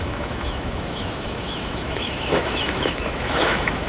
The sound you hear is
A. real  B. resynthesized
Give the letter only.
B